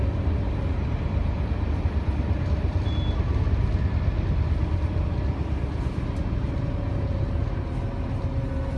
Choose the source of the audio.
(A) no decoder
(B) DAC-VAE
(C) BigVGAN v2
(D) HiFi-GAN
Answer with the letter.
A